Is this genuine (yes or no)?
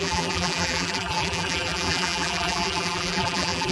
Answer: no